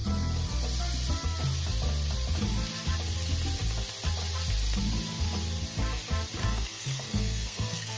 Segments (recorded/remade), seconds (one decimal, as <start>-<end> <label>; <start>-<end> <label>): 0.0-6.4 recorded; 6.4-8.0 remade